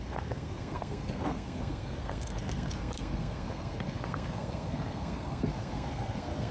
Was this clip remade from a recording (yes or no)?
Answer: yes